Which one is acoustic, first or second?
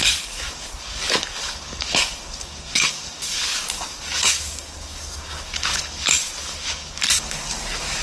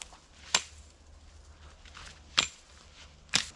second